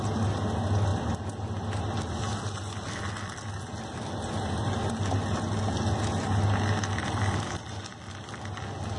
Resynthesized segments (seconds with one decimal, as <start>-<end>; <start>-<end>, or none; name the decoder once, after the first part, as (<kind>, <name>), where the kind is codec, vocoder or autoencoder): none